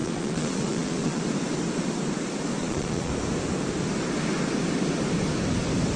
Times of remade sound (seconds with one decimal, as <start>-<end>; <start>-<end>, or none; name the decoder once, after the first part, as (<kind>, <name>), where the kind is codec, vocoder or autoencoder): 0.0-1.2 (vocoder, Vocos); 2.6-3.1